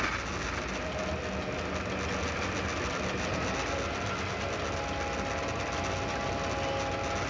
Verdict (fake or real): real